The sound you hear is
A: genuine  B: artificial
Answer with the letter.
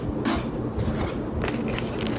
A